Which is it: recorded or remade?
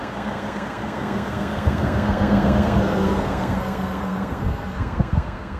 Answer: remade